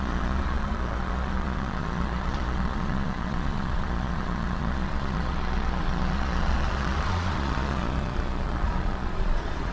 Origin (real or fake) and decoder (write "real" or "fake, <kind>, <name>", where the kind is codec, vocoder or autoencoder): fake, vocoder, Vocos